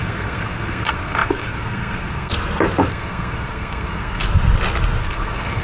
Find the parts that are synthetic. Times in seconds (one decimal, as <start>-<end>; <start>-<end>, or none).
0.0-2.3; 2.9-4.2; 5.0-5.6